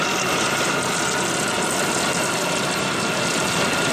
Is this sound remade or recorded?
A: recorded